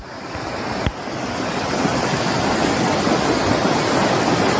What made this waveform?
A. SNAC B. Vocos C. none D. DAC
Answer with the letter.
C